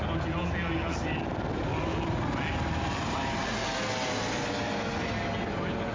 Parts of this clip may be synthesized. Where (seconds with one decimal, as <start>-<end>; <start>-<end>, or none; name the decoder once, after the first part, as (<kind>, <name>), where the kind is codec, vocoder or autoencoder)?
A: none